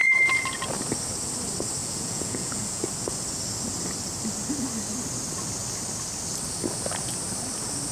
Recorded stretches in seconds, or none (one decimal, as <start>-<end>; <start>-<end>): 0.7-1.8; 2.9-7.9